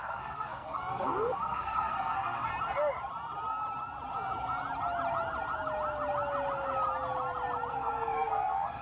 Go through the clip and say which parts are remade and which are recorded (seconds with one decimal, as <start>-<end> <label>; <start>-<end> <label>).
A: 0.0-2.5 remade; 2.5-7.7 recorded; 7.7-8.8 remade